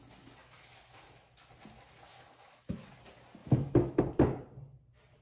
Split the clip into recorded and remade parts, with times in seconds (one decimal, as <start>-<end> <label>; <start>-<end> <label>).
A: 0.0-0.4 recorded; 0.4-1.3 remade; 1.3-2.1 recorded; 2.1-2.9 remade; 2.9-3.4 recorded; 3.4-4.0 remade; 4.0-5.2 recorded